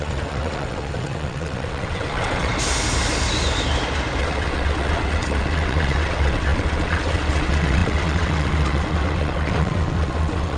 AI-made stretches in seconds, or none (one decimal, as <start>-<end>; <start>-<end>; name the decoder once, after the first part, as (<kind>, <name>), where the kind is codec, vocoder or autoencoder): 0.0-2.5 (vocoder, WaveNeXt); 4.2-10.6